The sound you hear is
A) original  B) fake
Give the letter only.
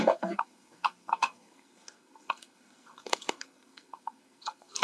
B